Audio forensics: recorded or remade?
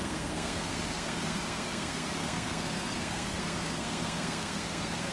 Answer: remade